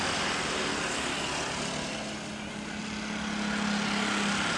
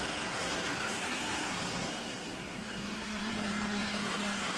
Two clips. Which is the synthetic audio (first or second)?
second